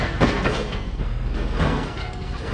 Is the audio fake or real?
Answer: fake